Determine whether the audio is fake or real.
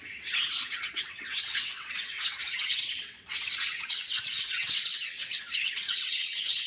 fake